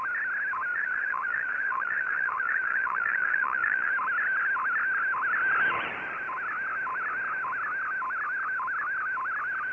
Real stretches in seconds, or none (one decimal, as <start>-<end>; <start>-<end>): 0.0-0.7; 3.9-9.7